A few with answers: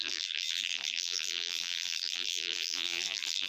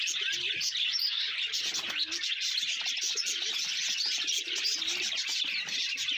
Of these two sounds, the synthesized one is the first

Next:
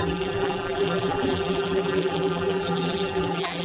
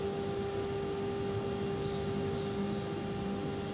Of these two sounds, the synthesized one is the first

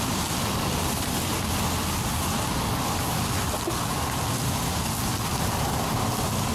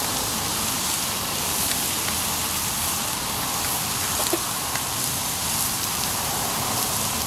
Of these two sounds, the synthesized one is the second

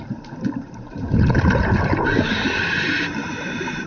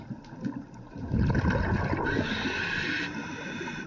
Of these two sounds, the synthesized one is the first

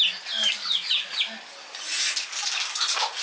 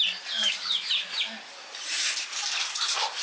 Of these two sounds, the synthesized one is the second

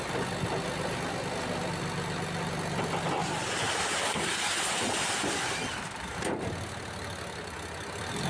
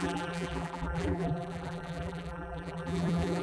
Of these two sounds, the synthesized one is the second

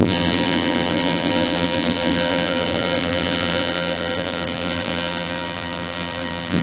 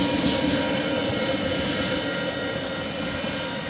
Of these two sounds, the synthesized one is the first